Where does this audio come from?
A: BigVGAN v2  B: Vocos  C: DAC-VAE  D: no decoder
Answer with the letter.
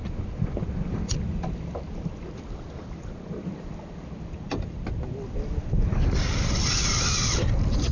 D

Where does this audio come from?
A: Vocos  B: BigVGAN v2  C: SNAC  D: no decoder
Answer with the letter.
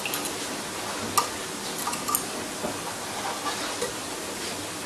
D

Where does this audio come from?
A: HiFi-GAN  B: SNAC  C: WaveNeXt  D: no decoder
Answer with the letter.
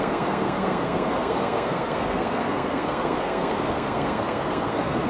B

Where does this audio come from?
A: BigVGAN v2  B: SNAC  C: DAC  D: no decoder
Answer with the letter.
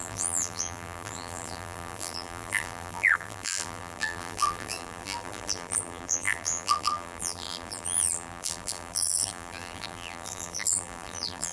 A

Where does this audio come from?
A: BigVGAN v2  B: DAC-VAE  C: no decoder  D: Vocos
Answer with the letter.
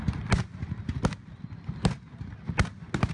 C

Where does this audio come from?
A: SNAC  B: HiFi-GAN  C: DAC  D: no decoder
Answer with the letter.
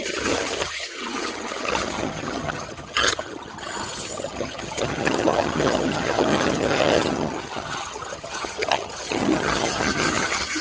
B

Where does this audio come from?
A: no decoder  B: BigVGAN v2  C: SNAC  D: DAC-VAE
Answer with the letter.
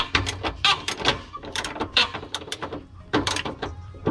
B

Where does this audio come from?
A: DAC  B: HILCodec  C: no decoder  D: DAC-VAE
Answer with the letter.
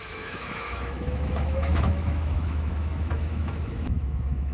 D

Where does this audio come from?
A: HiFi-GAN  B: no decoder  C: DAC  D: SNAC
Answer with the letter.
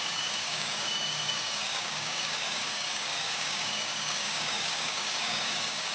C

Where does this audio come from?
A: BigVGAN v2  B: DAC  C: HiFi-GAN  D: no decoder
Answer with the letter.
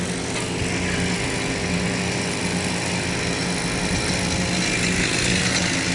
D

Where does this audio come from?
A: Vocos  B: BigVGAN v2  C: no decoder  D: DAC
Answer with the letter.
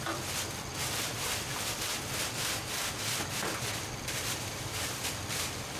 B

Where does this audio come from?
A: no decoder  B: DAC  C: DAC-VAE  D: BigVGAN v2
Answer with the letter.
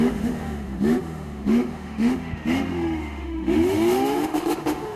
C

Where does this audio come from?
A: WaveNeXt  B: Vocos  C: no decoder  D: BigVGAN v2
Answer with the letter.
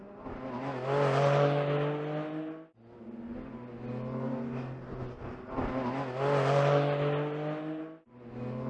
C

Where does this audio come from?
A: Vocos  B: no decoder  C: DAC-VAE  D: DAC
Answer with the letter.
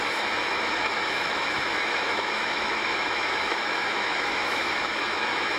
C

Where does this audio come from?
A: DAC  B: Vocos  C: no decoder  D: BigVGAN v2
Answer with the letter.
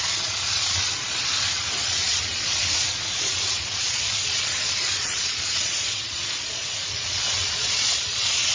B